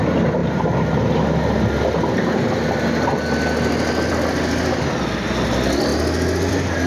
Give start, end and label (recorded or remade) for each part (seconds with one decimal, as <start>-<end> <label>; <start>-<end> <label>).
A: 0.0-6.9 recorded